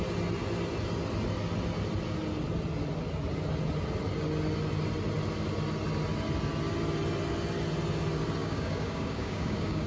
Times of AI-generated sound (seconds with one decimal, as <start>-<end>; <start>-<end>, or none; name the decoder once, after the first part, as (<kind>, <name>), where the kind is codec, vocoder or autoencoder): 8.4-9.9 (codec, DAC)